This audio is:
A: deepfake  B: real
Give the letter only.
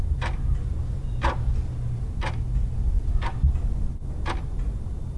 B